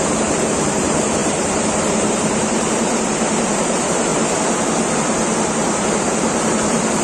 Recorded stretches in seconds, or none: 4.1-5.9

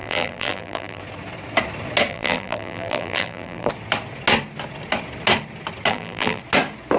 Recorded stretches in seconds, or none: 1.0-2.1; 3.7-5.9; 6.4-7.0

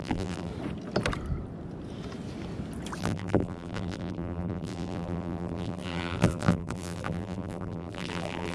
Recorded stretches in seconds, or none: 0.5-3.0

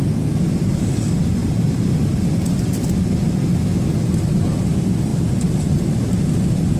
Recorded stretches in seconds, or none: 0.0-1.4; 1.9-5.1

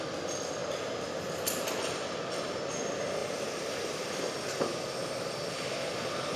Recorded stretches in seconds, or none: 0.0-6.4

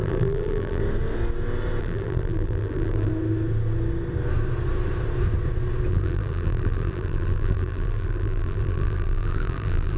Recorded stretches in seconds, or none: 0.8-1.8; 3.1-5.9